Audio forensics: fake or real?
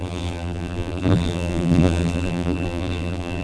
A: fake